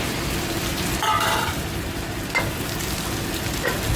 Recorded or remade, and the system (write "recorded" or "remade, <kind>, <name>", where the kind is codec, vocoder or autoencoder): remade, vocoder, BigVGAN v2